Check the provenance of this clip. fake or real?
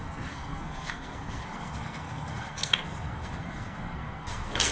fake